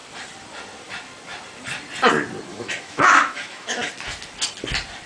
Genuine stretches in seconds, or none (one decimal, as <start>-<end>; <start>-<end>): 0.0-2.5; 3.9-5.1